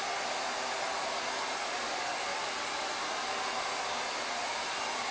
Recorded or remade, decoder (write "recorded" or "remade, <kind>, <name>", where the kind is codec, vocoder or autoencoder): recorded